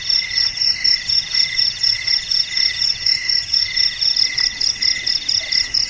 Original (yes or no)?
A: yes